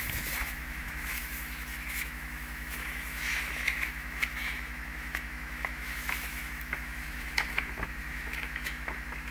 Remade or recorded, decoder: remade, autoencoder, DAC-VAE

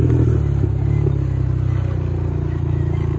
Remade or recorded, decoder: recorded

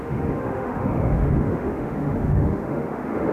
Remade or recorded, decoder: remade, autoencoder, DAC-VAE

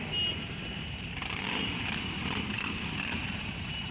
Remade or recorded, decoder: remade, vocoder, BigVGAN v2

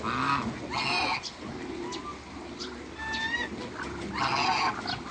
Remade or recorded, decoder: recorded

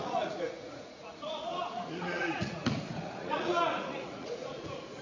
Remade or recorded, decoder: remade, vocoder, Vocos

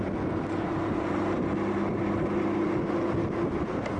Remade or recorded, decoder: recorded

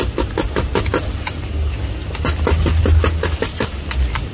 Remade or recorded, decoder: recorded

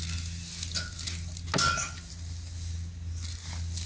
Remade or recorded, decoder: recorded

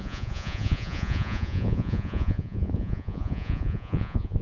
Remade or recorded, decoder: remade, vocoder, Vocos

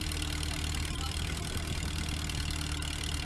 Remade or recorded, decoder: remade, vocoder, BigVGAN v2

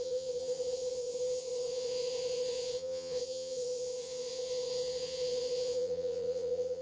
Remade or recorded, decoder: remade, vocoder, Vocos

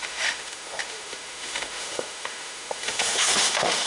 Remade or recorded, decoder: remade, autoencoder, DAC-VAE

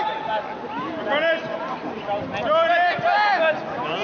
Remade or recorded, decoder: recorded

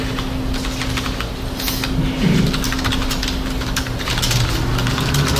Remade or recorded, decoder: recorded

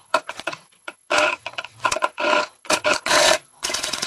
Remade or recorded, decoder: remade, vocoder, WaveNeXt